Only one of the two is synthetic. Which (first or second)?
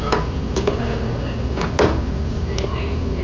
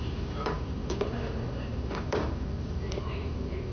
second